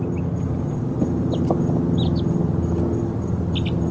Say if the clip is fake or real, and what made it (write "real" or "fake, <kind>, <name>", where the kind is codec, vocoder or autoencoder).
real